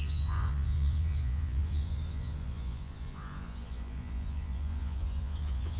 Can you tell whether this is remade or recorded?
remade